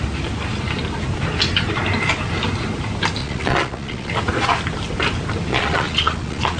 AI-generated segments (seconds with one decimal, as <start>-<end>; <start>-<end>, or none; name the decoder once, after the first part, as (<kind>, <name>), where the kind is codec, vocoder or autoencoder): 3.2-4.1 (vocoder, Vocos); 5.5-6.6

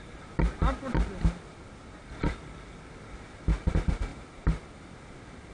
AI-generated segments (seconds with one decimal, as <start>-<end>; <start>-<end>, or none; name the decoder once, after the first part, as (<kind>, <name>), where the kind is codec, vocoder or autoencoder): none